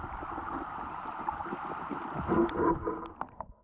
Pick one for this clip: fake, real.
real